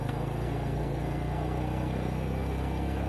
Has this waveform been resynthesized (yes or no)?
yes